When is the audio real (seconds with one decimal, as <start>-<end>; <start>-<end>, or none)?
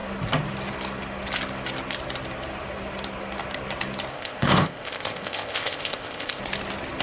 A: 0.0-4.1; 6.4-7.0